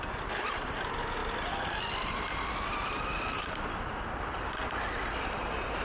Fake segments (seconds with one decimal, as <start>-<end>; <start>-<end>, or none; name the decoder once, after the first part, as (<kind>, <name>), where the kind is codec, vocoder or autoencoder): none

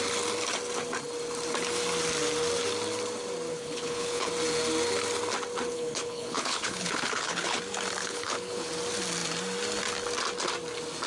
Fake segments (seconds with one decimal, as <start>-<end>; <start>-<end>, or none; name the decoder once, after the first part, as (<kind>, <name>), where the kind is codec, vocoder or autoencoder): 3.5-4.3 (codec, HILCodec); 5.7-7.6; 8.0-8.7

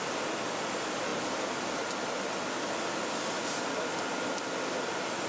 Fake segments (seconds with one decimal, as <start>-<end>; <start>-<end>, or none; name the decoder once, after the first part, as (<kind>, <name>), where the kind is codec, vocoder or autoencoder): none

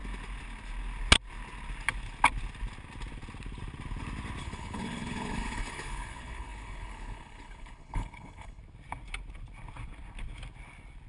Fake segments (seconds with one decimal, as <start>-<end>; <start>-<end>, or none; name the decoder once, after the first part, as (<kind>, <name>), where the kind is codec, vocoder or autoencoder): 4.4-8.6 (codec, HILCodec)